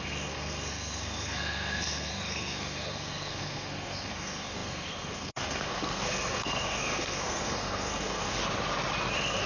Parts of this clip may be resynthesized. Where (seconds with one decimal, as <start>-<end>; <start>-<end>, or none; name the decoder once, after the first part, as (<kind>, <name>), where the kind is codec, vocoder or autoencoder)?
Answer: 0.0-8.4 (codec, SNAC); 9.1-9.5